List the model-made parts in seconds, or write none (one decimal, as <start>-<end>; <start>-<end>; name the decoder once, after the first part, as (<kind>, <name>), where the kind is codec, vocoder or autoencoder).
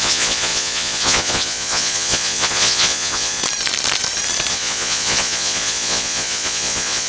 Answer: 0.0-3.4 (vocoder, Vocos); 4.5-7.1